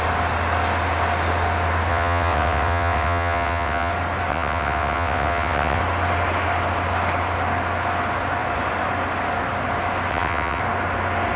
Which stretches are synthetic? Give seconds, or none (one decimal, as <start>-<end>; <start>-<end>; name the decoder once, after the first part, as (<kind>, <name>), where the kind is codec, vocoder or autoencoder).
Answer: 1.9-3.9 (vocoder, WaveNeXt); 4.3-5.8; 10.1-10.6